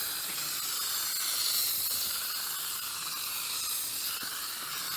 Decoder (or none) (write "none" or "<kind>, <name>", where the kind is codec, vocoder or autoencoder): none